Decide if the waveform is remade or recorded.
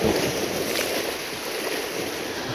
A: recorded